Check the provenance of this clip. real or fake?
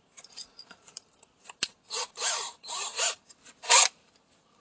real